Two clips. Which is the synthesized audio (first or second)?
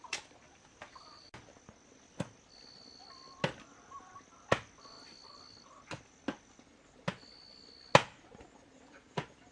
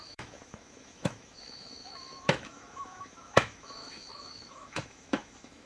second